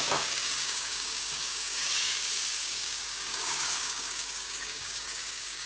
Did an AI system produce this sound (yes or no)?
yes